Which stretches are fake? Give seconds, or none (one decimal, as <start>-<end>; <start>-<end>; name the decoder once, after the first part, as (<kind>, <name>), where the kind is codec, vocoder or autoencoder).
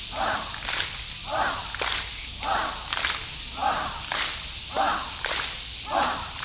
none